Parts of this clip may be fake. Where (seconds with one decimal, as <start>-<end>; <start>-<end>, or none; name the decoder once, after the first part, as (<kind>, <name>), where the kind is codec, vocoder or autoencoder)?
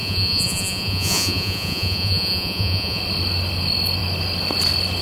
0.0-3.0 (vocoder, Vocos)